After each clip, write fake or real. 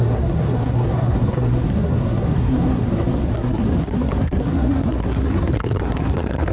fake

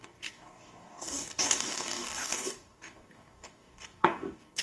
fake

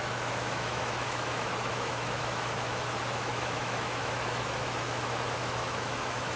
fake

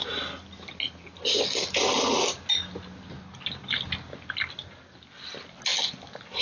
real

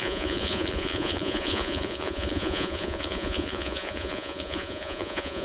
fake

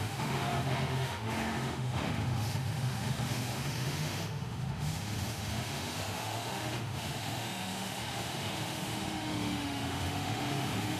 fake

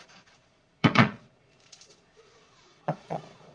fake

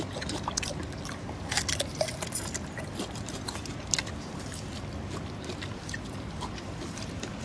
real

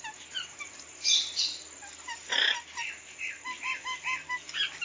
fake